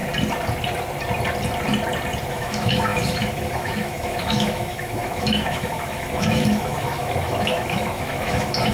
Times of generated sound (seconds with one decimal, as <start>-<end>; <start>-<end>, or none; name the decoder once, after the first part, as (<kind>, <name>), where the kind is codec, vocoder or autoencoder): 2.3-8.7 (autoencoder, DAC-VAE)